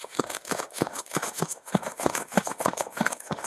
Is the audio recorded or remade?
remade